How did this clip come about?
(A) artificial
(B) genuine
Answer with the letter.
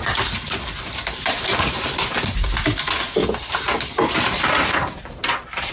B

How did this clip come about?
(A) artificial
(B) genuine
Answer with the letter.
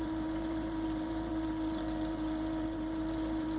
A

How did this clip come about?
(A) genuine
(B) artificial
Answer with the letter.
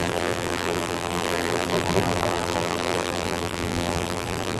B